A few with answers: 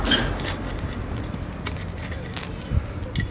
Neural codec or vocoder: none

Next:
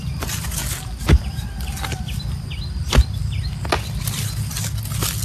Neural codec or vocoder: none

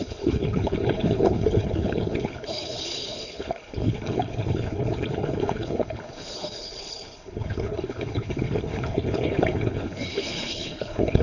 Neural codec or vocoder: codec, HILCodec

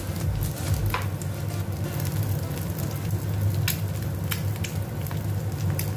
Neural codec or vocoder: none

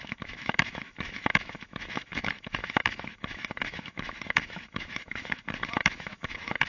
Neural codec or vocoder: autoencoder, DAC-VAE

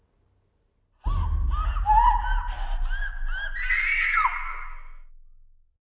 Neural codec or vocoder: none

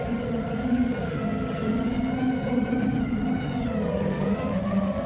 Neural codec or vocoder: vocoder, HiFi-GAN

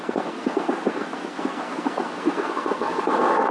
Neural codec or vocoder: codec, SNAC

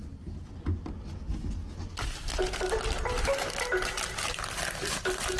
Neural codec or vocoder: none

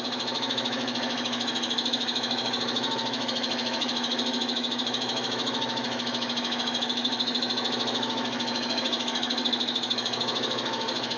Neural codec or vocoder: autoencoder, DAC-VAE